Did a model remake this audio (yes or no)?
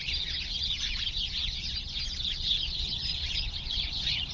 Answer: yes